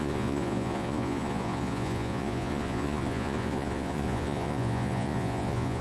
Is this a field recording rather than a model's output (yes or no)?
no